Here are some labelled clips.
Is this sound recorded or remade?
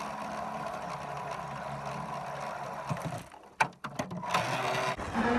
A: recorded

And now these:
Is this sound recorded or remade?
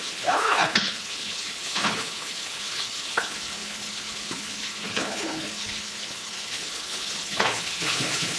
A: remade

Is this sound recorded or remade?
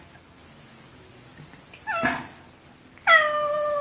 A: recorded